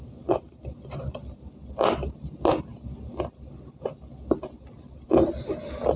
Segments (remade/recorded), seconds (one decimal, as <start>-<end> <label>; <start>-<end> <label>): 0.0-6.0 recorded